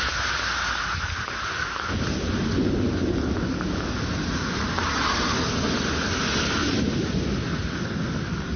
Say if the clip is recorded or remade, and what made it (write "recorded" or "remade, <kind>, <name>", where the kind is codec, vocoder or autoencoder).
recorded